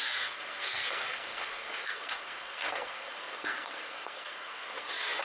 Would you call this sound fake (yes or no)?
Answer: yes